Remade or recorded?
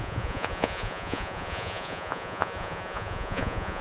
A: remade